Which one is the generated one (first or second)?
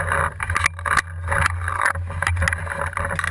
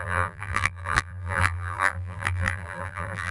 second